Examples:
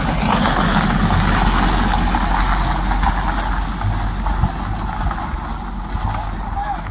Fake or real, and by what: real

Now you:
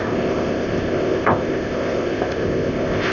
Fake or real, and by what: fake, codec, ZipCodec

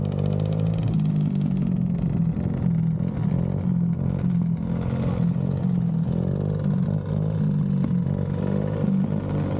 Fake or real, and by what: real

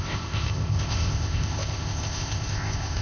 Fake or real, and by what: fake, codec, ZipCodec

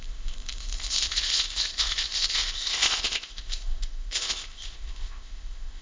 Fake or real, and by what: fake, codec, ZipCodec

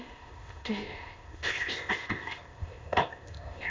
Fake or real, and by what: fake, codec, ZipCodec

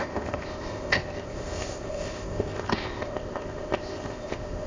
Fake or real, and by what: fake, codec, ZipCodec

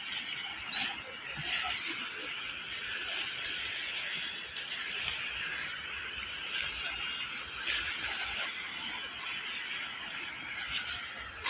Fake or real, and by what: real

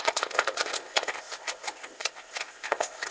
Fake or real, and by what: fake, codec, ZipCodec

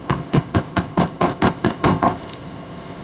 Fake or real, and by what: fake, codec, ZipCodec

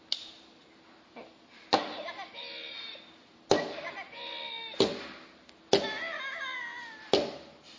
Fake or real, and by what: real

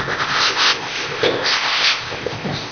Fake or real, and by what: fake, codec, ZipCodec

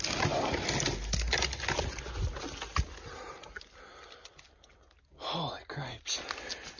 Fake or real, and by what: real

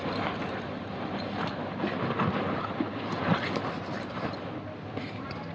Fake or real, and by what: real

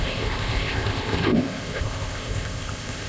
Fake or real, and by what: fake, codec, ZipCodec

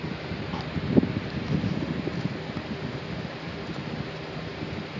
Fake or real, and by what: real